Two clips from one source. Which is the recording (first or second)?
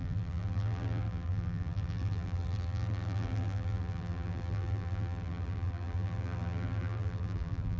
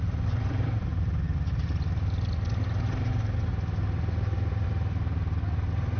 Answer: second